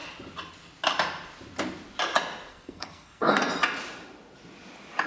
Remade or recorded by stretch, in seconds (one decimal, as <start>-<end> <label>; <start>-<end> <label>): 0.0-2.5 recorded; 2.5-3.5 remade; 3.5-5.1 recorded